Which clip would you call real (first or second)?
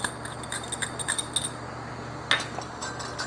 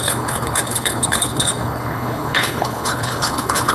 first